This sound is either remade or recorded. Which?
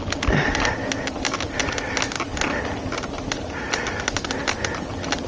recorded